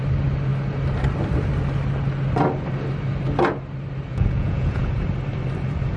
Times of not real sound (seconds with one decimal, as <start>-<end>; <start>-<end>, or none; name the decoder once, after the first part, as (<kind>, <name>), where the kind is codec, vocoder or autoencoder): 4.1-4.9 (vocoder, Vocos)